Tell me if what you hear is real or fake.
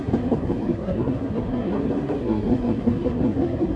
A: fake